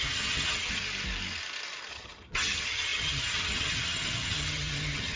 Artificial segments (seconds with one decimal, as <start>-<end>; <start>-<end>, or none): 0.0-0.8; 1.9-5.2